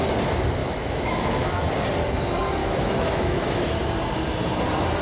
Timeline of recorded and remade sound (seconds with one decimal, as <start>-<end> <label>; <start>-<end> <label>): 0.0-0.6 recorded; 0.6-1.7 remade; 1.7-2.6 recorded; 2.6-3.8 remade; 3.8-5.0 recorded